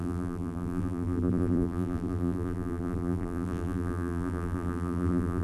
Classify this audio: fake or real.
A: fake